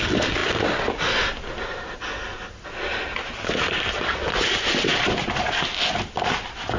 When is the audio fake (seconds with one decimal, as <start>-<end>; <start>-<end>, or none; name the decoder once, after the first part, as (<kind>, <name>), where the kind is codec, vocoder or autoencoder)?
none